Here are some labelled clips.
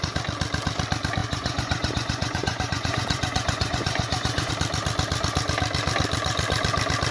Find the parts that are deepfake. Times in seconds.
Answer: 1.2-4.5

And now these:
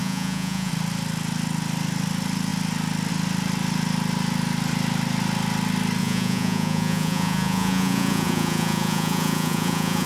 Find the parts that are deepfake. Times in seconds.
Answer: 0.0-0.7; 6.0-10.1

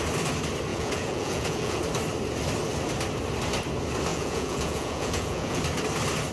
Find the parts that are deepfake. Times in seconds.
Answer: 0.7-1.8; 4.1-5.6